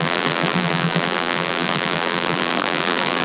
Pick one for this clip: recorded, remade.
remade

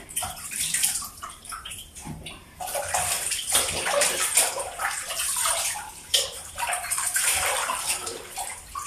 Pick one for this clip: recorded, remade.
remade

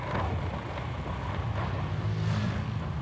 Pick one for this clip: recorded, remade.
recorded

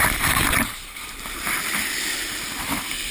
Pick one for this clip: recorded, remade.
remade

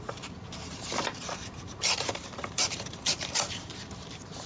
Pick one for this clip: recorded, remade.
remade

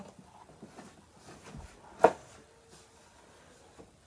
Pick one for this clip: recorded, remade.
recorded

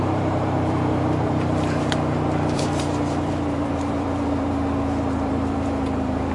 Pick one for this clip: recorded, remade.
remade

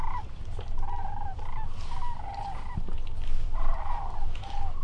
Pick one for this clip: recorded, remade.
recorded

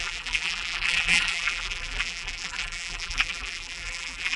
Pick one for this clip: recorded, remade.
remade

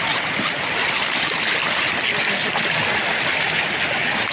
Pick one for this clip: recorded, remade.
recorded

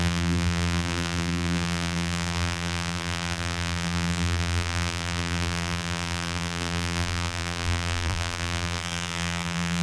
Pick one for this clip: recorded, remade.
remade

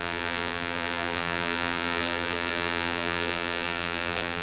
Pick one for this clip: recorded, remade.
remade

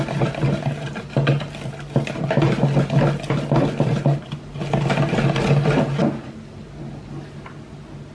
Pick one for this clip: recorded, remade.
recorded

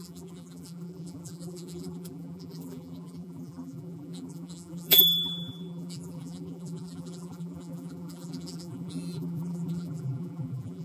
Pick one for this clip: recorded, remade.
remade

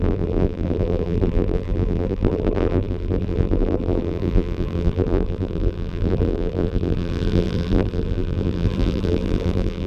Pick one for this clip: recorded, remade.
remade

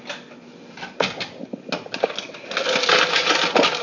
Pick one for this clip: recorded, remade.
recorded